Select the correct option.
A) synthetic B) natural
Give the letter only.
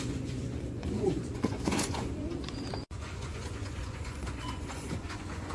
A